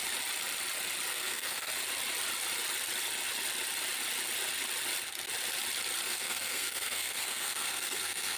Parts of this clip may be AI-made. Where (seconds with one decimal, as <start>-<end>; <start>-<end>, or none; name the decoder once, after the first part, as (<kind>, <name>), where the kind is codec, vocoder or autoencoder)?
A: 1.1-1.7 (codec, SNAC); 6.1-8.4